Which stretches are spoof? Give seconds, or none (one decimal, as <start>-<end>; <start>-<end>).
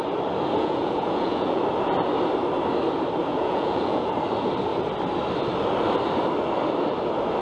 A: 0.6-1.6; 3.2-4.1